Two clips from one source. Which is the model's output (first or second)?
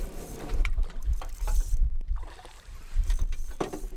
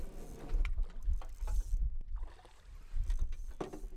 first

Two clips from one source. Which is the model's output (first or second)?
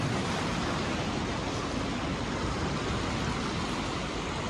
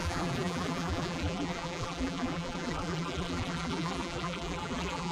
second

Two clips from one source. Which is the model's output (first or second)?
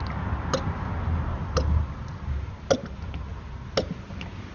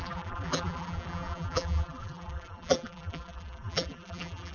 second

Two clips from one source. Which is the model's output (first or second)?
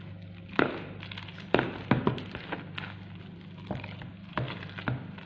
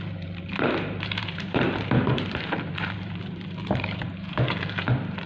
second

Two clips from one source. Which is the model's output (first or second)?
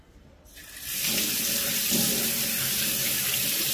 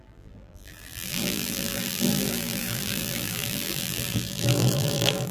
second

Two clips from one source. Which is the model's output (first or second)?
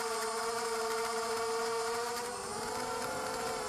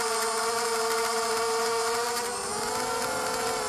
first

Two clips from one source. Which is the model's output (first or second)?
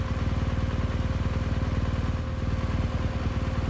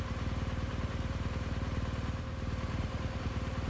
second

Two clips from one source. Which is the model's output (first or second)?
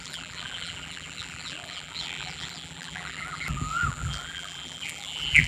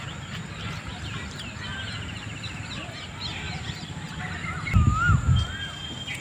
first